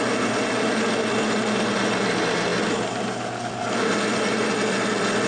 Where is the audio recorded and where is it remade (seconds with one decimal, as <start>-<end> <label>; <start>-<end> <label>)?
0.0-5.3 recorded